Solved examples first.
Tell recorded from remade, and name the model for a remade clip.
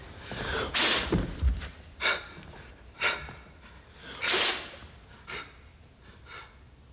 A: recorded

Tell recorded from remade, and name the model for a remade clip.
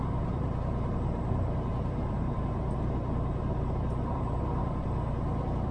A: remade, vocoder, BigVGAN v2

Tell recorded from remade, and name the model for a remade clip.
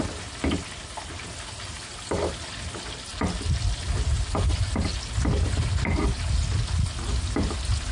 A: recorded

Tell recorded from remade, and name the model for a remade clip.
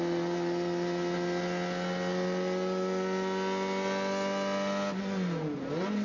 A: recorded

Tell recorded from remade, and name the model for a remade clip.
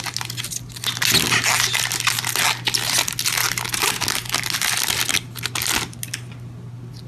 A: recorded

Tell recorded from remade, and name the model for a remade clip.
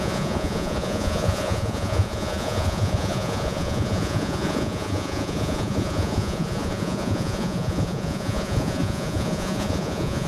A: remade, vocoder, Vocos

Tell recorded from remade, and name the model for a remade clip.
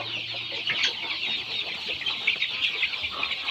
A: recorded